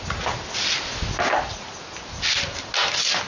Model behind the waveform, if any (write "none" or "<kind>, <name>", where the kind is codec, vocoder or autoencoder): none